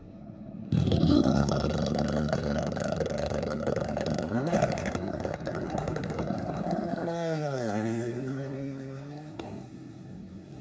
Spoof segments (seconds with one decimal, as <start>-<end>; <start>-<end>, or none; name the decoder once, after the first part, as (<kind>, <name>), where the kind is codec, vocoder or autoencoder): 0.0-10.6 (codec, SNAC)